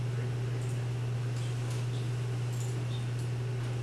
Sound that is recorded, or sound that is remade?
recorded